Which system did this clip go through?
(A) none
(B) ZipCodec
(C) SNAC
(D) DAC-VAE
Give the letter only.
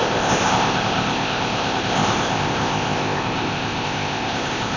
B